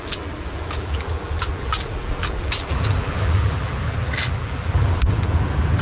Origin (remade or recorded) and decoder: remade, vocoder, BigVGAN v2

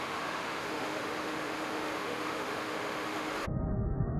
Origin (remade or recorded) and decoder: remade, autoencoder, DAC-VAE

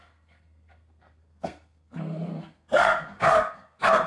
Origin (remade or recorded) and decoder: remade, codec, SNAC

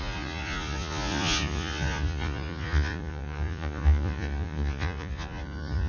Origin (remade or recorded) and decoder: remade, vocoder, Vocos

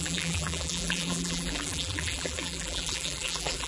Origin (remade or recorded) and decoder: remade, vocoder, BigVGAN v2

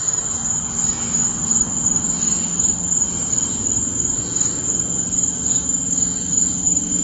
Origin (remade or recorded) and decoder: recorded